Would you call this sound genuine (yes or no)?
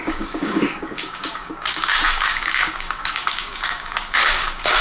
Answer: no